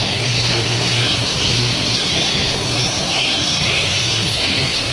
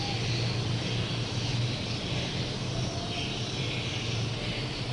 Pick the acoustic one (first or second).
second